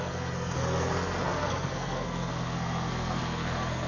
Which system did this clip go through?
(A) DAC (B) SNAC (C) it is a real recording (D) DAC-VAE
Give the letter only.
B